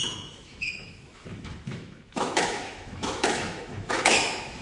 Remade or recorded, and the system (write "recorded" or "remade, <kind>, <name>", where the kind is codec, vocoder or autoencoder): remade, autoencoder, DAC-VAE